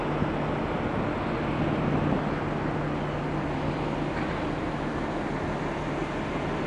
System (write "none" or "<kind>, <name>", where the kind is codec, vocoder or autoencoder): none